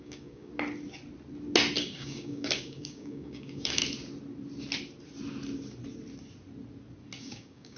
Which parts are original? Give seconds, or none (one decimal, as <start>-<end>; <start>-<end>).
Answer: 0.5-1.8; 3.8-7.2

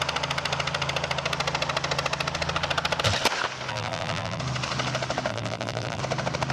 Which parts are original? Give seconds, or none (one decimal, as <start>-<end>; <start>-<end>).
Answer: 0.0-3.7; 4.4-5.3; 6.0-6.5

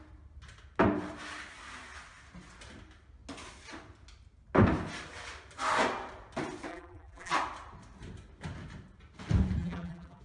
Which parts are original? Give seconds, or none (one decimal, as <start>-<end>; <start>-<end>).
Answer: 0.0-6.7; 7.3-9.6

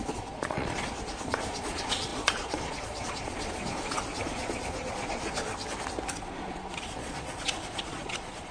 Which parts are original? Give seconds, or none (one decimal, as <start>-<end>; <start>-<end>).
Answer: 5.5-6.1

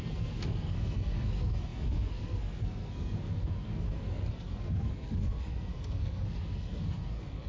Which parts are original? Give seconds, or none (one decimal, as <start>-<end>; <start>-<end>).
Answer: none

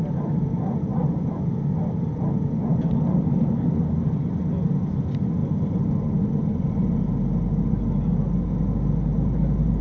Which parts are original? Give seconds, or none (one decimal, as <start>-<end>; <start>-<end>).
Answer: 0.0-0.9; 1.4-2.7; 3.5-9.8

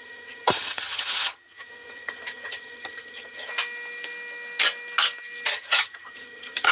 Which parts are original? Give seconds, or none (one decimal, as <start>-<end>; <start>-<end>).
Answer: 3.5-5.5